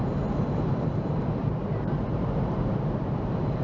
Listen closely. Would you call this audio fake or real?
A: fake